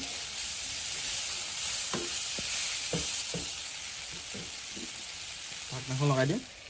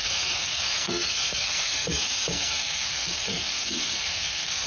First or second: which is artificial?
second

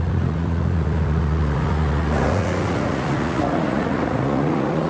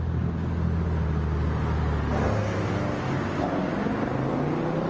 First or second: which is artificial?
first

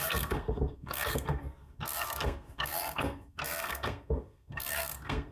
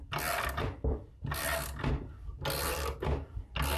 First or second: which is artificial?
first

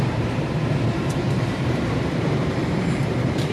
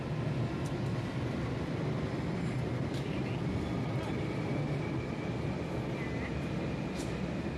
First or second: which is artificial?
first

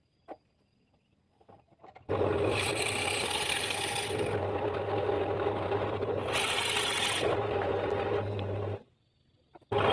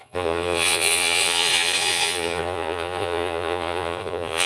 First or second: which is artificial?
second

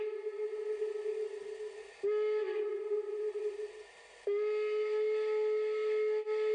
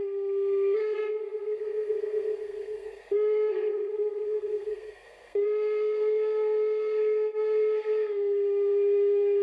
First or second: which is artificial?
second